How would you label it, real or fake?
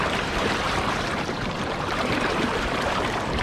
fake